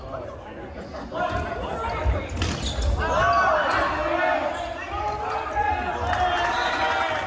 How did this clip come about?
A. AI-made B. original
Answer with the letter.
B